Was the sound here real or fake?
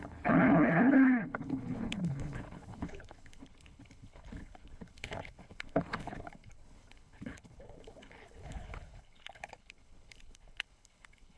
fake